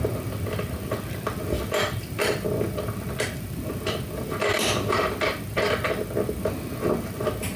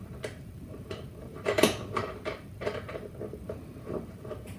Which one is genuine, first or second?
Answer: first